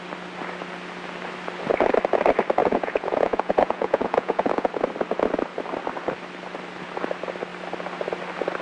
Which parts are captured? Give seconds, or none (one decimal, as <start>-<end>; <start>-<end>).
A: 0.0-2.6; 4.7-8.6